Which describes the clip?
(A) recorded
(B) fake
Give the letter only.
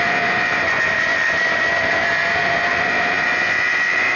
B